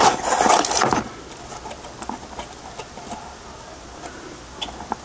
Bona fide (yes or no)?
yes